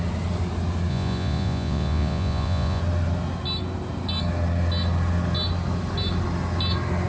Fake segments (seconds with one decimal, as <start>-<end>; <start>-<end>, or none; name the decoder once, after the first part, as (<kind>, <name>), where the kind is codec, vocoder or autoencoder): 0.9-2.8 (vocoder, Vocos)

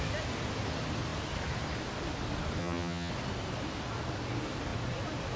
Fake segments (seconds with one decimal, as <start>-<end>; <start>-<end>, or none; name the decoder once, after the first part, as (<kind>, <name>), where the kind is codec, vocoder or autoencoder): 2.6-3.1 (vocoder, HiFi-GAN)

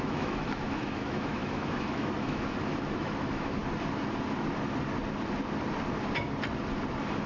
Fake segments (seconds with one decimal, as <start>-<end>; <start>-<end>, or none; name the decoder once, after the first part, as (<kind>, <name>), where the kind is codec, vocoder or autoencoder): 0.0-3.6 (autoencoder, DAC-VAE)

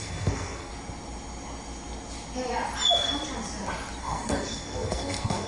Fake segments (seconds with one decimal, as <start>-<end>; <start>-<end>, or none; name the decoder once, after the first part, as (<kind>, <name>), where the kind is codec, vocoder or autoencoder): 0.0-0.7 (codec, SNAC); 4.0-5.5

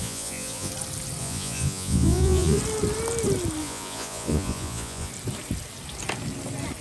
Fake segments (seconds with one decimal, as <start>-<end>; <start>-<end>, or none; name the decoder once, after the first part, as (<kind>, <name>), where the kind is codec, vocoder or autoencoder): 0.0-0.7 (vocoder, Vocos); 1.2-2.6; 3.6-5.1

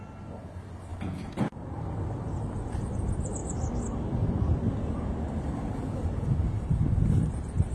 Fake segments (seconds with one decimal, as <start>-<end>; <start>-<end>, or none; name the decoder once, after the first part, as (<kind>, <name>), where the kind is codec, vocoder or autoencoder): none

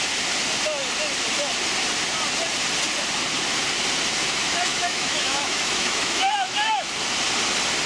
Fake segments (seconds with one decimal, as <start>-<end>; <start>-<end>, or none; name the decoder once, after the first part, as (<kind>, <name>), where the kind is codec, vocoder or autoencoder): 4.2-6.9 (autoencoder, DAC-VAE)